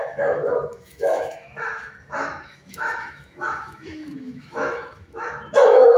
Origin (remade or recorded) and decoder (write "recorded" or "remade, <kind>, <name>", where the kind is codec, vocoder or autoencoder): remade, autoencoder, DAC-VAE